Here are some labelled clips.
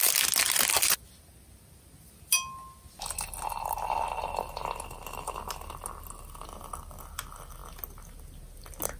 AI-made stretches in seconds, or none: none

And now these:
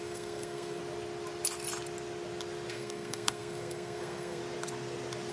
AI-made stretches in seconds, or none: 0.0-0.8 (codec, SNAC); 2.7-4.4

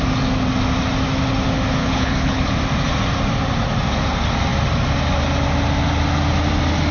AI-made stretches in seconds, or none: 1.8-2.5 (codec, HILCodec)